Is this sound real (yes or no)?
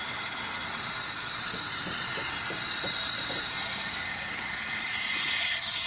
yes